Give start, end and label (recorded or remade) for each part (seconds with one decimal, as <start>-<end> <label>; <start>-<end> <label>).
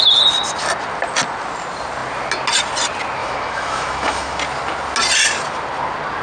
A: 0.0-3.2 recorded; 3.2-4.4 remade; 4.4-6.2 recorded